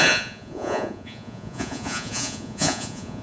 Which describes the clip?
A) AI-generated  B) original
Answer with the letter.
A